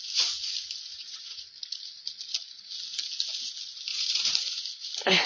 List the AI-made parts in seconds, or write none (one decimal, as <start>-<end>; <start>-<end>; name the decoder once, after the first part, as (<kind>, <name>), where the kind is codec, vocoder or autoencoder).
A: 0.9-1.5 (vocoder, Vocos); 3.9-4.7